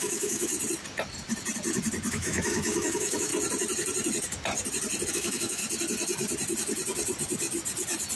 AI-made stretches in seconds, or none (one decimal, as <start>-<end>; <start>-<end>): 0.0-0.5; 2.1-3.3; 5.1-5.6